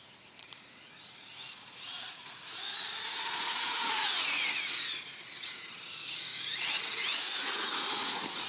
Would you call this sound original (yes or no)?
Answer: no